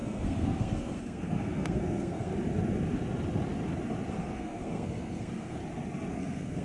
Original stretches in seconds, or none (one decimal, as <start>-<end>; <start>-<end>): 2.3-4.1; 5.6-6.1